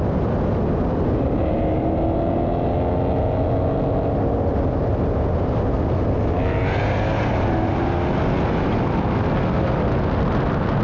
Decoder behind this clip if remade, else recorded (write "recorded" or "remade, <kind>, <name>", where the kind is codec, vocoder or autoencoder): recorded